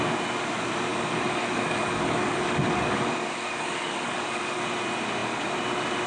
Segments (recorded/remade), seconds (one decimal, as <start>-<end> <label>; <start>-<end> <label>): 0.0-0.9 recorded; 0.9-4.6 remade; 4.6-6.1 recorded